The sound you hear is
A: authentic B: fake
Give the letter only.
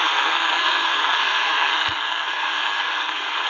B